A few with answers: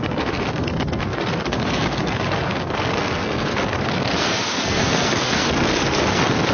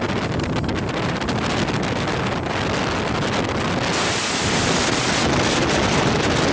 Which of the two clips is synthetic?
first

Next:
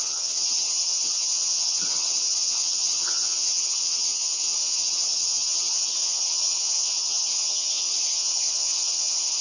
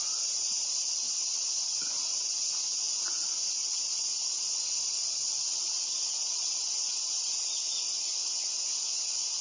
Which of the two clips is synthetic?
first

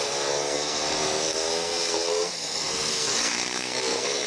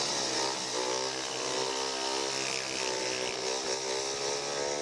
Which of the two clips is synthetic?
first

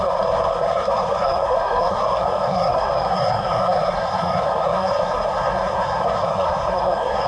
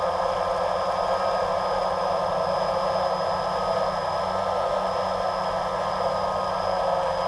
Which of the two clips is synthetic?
first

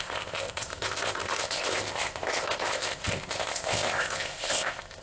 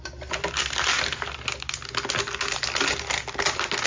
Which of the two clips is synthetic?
first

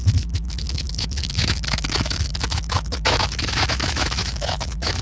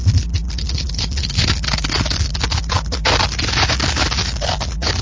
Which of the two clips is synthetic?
first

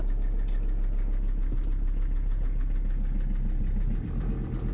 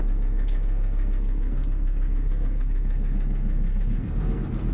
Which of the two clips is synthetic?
second